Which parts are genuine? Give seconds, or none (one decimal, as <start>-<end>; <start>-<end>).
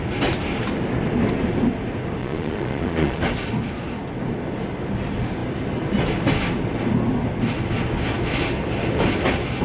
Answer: 0.0-2.2; 3.2-9.6